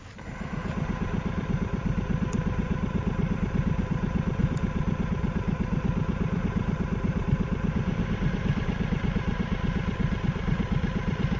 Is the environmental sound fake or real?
fake